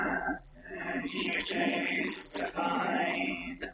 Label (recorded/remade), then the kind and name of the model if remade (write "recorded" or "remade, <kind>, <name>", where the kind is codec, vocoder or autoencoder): remade, vocoder, BigVGAN v2